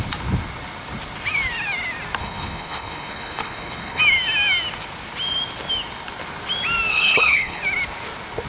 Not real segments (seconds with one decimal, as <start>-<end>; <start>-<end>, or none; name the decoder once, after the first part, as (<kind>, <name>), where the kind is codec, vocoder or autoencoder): 2.2-4.0 (codec, HILCodec); 6.9-7.6